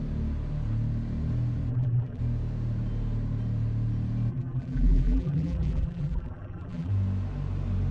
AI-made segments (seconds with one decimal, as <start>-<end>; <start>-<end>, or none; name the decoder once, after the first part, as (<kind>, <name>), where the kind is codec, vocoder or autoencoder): 1.7-2.2 (vocoder, BigVGAN v2); 4.3-6.9